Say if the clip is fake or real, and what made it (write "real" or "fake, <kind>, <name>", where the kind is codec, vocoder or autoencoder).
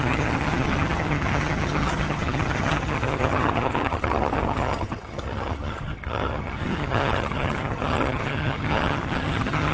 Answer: fake, vocoder, HiFi-GAN